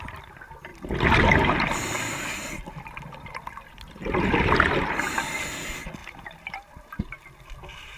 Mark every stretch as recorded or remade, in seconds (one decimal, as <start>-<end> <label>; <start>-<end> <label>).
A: 0.0-6.0 recorded; 6.0-6.7 remade; 6.7-8.0 recorded